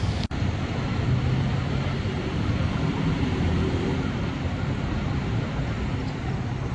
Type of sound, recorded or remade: recorded